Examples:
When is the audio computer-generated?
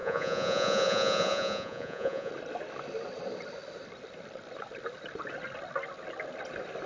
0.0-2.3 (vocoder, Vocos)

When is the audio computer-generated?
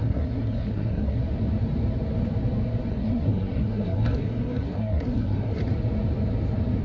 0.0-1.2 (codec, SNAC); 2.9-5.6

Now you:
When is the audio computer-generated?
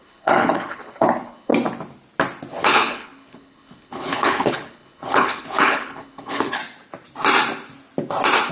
0.0-1.5 (codec, HILCodec); 2.6-6.6